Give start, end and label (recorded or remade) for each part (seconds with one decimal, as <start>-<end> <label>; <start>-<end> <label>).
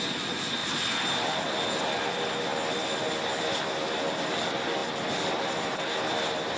0.0-6.6 recorded